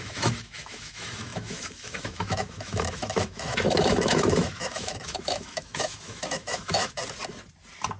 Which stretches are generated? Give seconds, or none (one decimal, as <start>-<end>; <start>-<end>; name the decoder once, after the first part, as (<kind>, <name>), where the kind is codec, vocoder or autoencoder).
0.0-7.0 (autoencoder, DAC-VAE)